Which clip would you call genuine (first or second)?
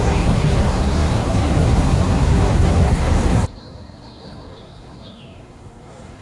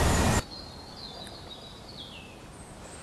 second